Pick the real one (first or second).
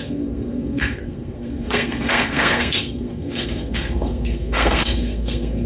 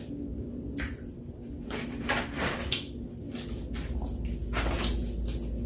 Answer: second